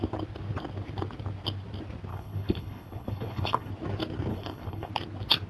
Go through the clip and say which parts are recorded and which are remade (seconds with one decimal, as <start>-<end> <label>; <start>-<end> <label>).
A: 0.0-2.1 recorded; 2.1-3.7 remade; 3.7-4.3 recorded; 4.3-4.9 remade; 4.9-5.5 recorded